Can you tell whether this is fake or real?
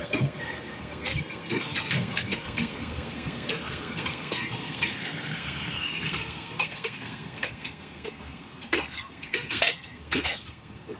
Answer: fake